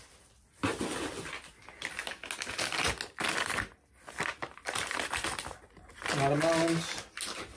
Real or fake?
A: real